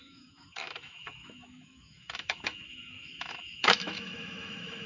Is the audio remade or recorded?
remade